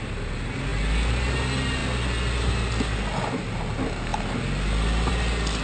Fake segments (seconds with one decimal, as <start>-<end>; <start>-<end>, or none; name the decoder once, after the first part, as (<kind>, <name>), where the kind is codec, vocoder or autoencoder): none